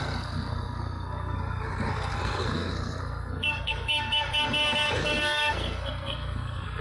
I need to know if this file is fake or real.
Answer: fake